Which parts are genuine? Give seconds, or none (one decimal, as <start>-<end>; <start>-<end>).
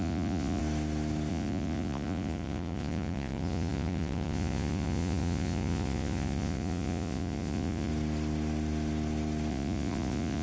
0.6-1.3; 7.9-9.5